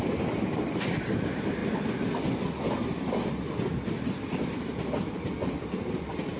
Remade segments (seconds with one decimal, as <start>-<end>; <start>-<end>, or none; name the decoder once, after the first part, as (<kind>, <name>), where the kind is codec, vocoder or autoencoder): none